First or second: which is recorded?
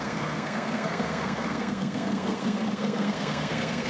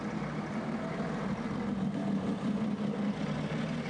second